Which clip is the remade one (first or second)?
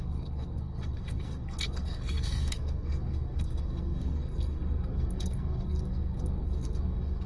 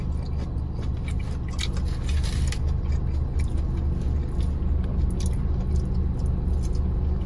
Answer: first